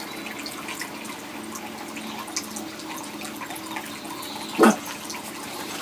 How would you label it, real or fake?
real